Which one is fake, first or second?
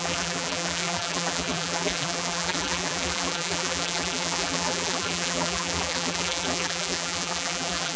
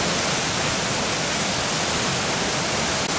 first